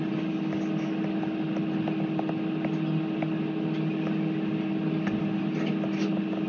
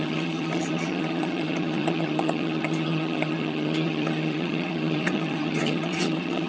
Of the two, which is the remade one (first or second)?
second